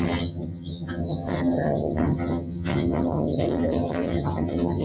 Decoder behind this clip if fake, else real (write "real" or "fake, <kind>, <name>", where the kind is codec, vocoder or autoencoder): fake, vocoder, HiFi-GAN